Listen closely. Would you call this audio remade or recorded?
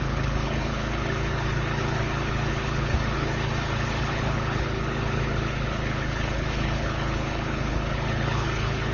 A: remade